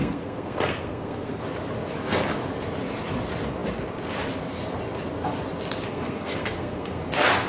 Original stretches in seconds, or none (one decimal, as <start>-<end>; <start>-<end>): 1.4-5.9; 7.0-7.5